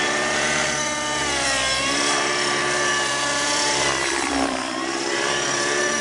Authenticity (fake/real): fake